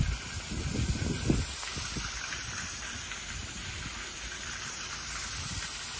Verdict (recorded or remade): recorded